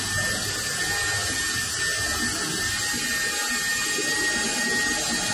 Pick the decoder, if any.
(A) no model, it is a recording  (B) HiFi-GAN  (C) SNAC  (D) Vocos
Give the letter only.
A